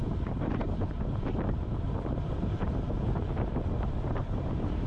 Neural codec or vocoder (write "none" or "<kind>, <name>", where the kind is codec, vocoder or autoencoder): vocoder, BigVGAN v2